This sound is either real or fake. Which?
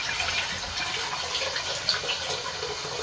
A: real